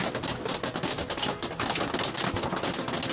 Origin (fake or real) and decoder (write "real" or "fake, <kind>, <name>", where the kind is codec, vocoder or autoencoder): real